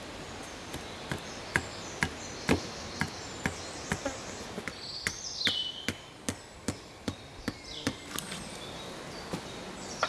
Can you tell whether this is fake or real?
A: real